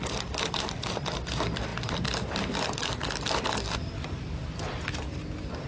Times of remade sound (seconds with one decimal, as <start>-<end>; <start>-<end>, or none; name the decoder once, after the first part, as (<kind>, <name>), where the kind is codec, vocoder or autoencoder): none

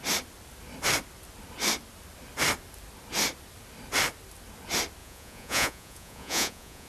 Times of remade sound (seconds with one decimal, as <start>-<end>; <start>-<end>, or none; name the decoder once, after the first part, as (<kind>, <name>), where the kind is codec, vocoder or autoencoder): 5.0-6.9 (vocoder, Vocos)